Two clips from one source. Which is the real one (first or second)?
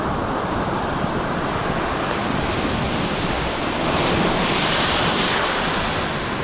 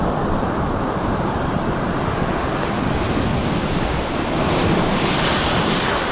second